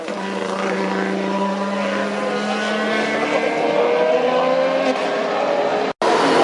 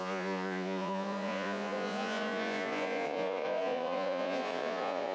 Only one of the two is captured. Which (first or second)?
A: first